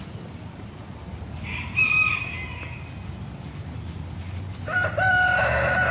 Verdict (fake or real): real